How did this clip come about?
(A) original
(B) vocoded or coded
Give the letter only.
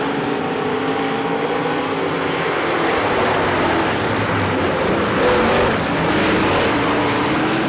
A